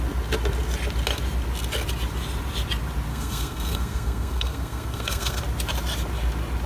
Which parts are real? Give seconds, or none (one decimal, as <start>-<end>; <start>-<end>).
0.0-3.1; 5.4-6.7